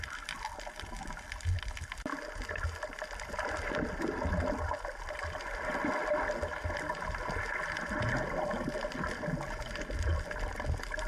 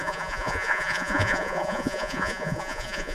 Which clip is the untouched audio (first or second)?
first